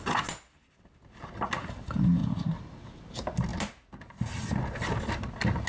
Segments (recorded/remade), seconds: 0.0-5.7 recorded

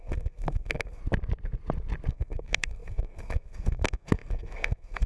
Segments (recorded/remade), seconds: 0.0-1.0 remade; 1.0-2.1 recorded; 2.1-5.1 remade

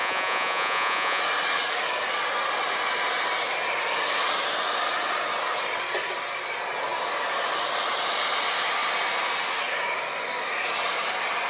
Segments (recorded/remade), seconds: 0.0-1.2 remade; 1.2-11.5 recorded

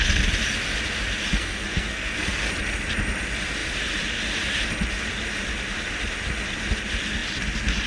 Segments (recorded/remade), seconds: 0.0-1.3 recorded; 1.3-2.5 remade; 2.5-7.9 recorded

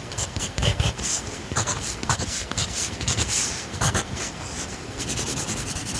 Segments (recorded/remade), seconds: 0.0-6.0 remade

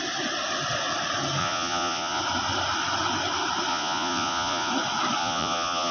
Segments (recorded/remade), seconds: 0.0-1.4 recorded; 1.4-2.2 remade; 2.2-3.7 recorded; 3.7-4.7 remade; 4.7-5.2 recorded; 5.2-5.9 remade